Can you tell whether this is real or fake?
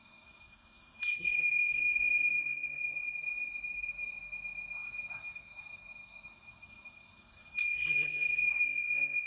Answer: fake